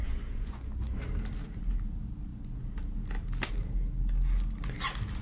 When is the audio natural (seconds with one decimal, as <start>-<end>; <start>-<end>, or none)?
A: 1.0-5.2